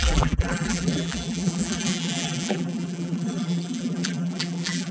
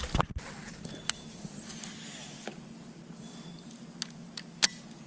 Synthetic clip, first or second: first